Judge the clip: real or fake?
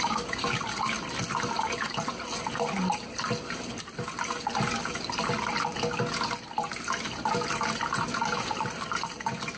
real